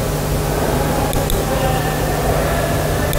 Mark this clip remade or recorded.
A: recorded